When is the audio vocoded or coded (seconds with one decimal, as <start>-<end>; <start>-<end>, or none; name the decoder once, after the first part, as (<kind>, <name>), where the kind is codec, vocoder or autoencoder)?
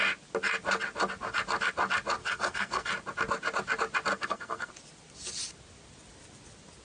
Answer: 2.2-2.9 (codec, SNAC); 4.1-4.7